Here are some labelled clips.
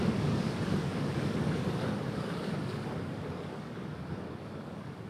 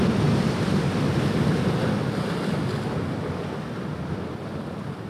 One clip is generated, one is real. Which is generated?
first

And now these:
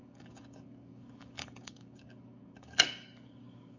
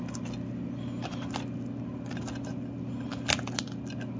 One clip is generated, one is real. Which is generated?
first